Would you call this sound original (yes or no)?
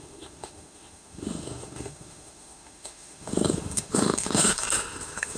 no